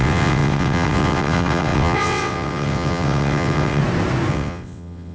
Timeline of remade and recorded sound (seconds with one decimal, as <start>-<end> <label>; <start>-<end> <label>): 0.0-3.8 remade; 3.8-4.3 recorded; 4.3-5.1 remade